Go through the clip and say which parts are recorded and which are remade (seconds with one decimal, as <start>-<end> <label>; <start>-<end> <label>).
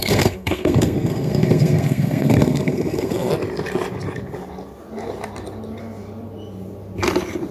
0.0-3.3 remade; 3.3-7.5 recorded